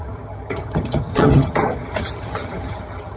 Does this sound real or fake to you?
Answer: fake